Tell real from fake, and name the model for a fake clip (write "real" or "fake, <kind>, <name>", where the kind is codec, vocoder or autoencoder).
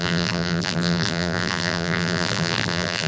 fake, vocoder, BigVGAN v2